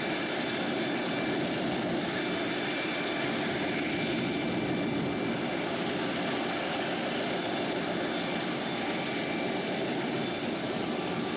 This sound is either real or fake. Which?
real